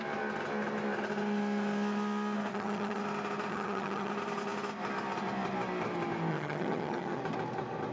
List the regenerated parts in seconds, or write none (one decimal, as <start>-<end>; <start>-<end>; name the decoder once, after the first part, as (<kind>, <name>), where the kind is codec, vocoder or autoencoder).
2.5-3.0 (vocoder, HiFi-GAN); 3.5-4.1; 6.3-7.2